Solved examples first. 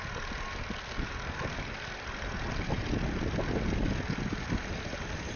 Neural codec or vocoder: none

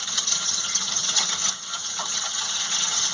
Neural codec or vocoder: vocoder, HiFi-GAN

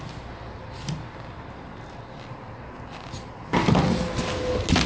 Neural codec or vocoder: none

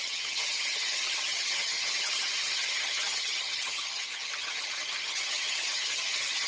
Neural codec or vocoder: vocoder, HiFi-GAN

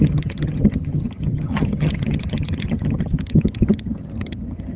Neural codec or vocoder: vocoder, HiFi-GAN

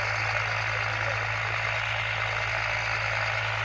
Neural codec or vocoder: none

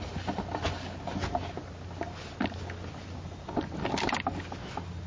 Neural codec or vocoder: none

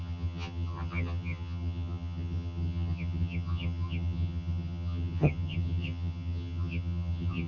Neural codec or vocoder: vocoder, HiFi-GAN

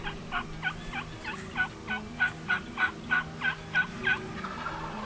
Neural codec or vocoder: none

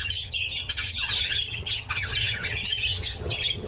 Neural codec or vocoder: vocoder, HiFi-GAN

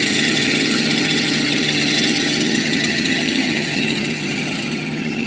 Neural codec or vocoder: vocoder, HiFi-GAN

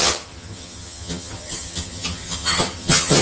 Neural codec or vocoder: vocoder, HiFi-GAN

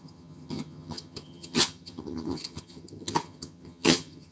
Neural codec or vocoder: vocoder, HiFi-GAN